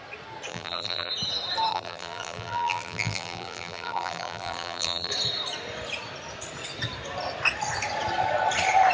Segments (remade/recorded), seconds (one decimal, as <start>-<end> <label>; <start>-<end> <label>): 0.0-0.5 recorded; 0.5-1.1 remade; 1.1-1.7 recorded; 1.7-5.1 remade; 5.1-8.9 recorded